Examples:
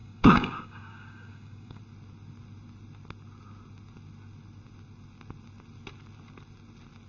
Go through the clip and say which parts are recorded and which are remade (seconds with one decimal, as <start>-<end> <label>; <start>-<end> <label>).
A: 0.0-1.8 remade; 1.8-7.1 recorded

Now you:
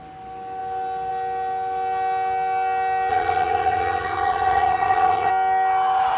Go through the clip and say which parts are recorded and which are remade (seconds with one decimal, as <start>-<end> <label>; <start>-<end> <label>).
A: 0.0-3.1 recorded; 3.1-5.3 remade; 5.3-6.2 recorded

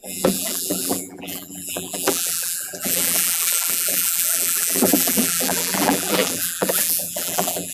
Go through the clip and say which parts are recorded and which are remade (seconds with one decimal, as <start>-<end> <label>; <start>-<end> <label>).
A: 0.0-7.7 remade

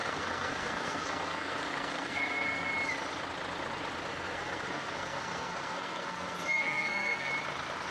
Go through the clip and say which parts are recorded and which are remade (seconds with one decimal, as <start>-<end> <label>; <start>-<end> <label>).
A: 0.0-2.7 remade; 2.7-4.1 recorded; 4.1-7.3 remade; 7.3-7.9 recorded